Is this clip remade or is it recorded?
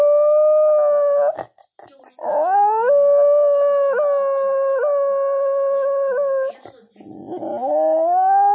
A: recorded